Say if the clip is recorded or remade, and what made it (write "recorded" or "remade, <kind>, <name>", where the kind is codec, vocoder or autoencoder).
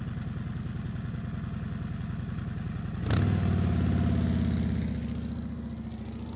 recorded